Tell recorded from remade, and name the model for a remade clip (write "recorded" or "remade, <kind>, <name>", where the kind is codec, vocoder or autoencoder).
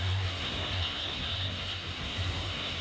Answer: remade, codec, SNAC